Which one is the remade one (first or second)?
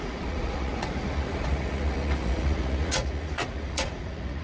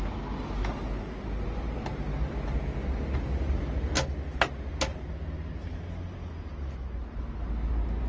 first